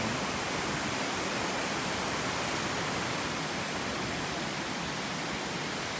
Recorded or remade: recorded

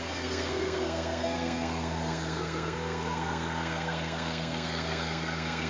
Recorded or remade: remade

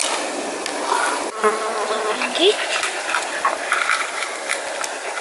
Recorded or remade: recorded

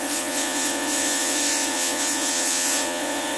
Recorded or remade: remade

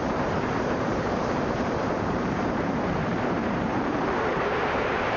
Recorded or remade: remade